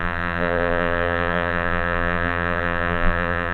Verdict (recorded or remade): remade